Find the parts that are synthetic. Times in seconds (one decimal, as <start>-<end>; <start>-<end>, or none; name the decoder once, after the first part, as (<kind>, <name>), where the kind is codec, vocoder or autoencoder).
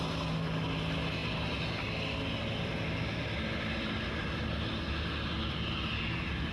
none